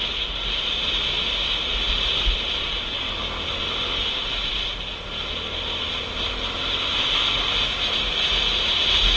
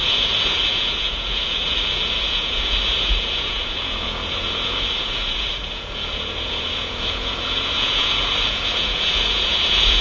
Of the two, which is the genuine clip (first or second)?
first